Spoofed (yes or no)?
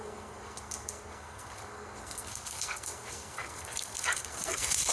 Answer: yes